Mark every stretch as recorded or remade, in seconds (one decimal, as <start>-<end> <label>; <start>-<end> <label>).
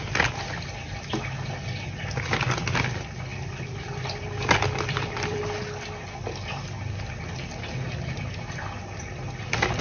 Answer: 0.0-3.3 recorded; 3.3-5.4 remade; 5.4-9.8 recorded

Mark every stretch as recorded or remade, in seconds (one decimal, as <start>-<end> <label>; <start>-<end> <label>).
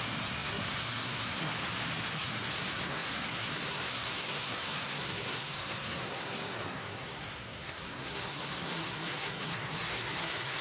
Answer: 0.0-1.5 remade; 1.5-2.1 recorded; 2.1-10.6 remade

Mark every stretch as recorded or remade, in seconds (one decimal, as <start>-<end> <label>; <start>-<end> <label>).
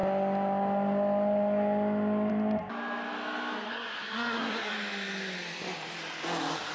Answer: 0.0-3.7 recorded; 3.7-4.7 remade; 4.7-6.7 recorded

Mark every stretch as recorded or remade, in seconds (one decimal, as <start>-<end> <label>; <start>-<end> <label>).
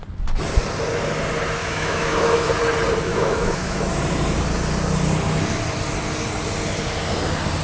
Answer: 0.0-1.6 recorded; 1.6-2.5 remade; 2.5-3.1 recorded; 3.1-3.8 remade; 3.8-7.6 recorded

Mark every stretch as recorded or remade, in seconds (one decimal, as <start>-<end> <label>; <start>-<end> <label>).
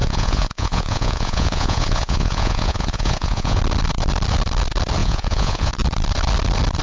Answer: 0.0-3.6 remade; 3.6-5.0 recorded; 5.0-5.7 remade; 5.7-6.8 recorded